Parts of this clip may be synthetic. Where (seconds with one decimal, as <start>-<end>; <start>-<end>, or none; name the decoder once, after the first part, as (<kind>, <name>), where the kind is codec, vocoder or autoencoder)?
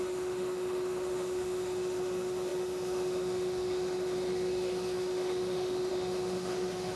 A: 0.0-7.0 (autoencoder, DAC-VAE)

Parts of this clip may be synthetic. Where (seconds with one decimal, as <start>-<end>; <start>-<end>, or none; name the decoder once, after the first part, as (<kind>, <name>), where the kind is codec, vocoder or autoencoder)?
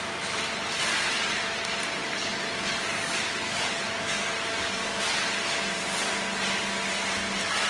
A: 2.0-5.0 (codec, DAC)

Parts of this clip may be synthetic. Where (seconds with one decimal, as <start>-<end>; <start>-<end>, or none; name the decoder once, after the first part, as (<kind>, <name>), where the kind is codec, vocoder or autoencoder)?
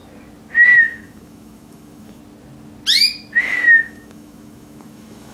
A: 0.8-2.2 (autoencoder, DAC-VAE); 3.4-5.3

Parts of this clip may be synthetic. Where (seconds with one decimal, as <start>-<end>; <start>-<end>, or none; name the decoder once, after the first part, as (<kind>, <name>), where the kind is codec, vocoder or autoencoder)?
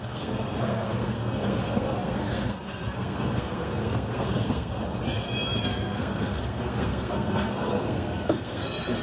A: 0.0-5.0 (codec, SNAC); 5.6-9.0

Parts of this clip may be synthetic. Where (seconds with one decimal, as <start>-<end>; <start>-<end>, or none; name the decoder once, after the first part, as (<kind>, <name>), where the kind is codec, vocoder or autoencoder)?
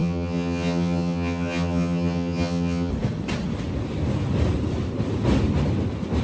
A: 0.0-2.9 (vocoder, HiFi-GAN)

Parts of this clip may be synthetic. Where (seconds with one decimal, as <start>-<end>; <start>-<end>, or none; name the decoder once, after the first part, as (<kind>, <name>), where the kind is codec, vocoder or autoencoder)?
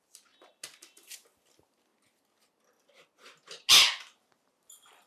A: none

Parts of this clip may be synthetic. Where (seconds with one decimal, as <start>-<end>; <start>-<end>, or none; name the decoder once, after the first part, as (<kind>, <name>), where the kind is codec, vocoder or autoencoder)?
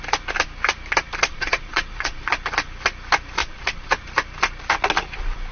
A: 1.3-2.3 (vocoder, Vocos); 3.4-3.9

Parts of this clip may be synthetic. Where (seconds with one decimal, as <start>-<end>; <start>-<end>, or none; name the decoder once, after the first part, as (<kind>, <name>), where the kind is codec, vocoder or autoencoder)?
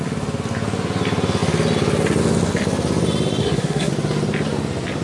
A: 3.4-3.9 (codec, SNAC)